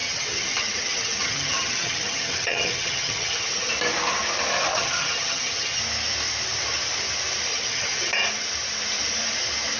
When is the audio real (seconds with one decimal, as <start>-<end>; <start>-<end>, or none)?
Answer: 3.7-4.7; 5.8-7.5; 8.1-9.8

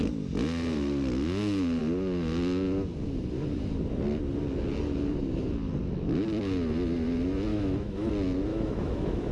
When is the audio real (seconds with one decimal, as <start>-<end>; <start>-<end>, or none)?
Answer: 0.0-7.5; 8.1-8.5

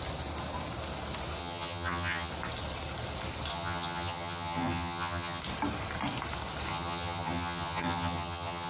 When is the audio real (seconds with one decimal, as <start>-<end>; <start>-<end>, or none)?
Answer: 0.0-1.4; 2.3-3.5; 5.4-6.7

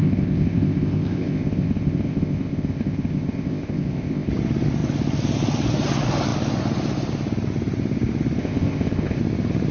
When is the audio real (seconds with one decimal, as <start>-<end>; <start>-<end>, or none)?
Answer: 4.3-8.4; 9.2-9.7

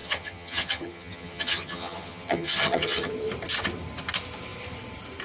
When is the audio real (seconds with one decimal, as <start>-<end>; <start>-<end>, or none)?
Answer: 3.1-5.2